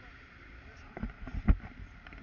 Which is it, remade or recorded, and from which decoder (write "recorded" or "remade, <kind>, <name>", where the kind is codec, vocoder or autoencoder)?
recorded